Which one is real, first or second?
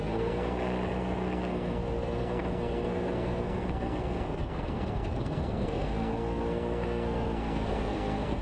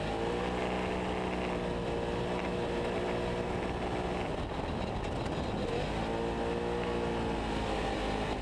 second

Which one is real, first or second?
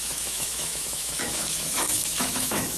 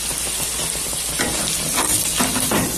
second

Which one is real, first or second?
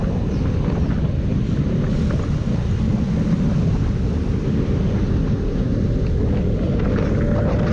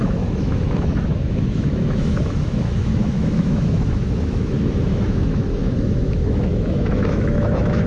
first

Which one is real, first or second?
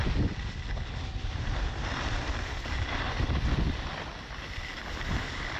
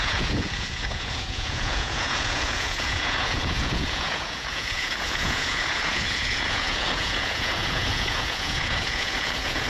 first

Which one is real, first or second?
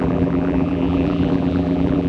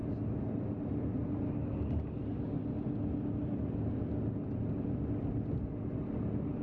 second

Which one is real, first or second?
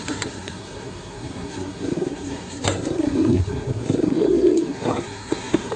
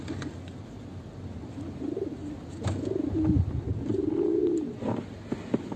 second